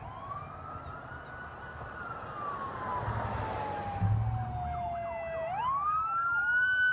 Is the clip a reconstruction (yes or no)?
no